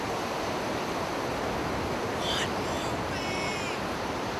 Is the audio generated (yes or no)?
no